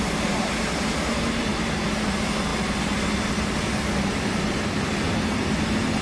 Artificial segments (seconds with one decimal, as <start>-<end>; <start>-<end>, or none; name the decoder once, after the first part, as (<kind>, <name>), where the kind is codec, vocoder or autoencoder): none